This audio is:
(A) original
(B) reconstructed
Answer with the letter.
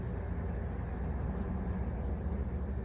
A